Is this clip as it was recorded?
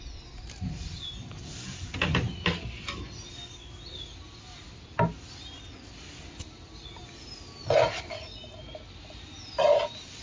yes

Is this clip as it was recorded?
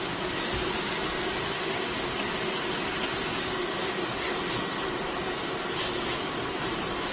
yes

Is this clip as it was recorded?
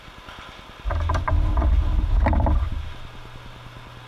yes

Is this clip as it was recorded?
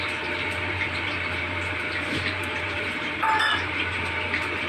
no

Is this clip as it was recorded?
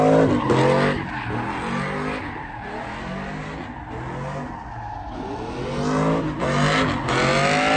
yes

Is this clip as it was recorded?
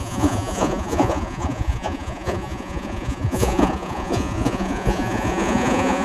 no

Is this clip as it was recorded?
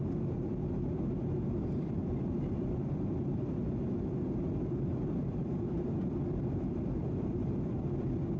no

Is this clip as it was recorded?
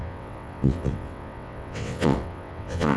no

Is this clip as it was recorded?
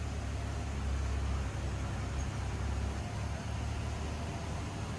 yes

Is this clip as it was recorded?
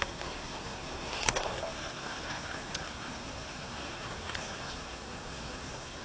no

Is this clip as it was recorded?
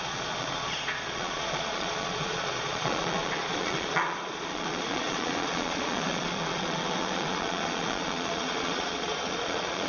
no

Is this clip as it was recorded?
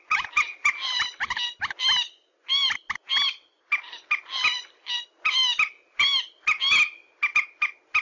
yes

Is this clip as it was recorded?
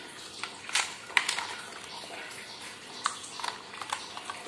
yes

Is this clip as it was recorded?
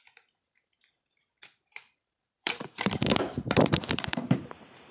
no